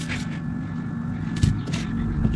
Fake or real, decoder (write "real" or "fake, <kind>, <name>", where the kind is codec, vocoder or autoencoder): real